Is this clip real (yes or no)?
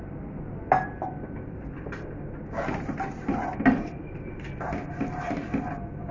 yes